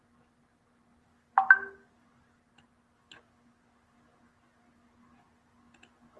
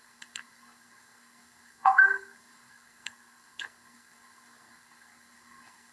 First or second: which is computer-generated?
second